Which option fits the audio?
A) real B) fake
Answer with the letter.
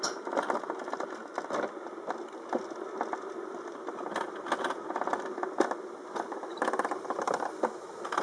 A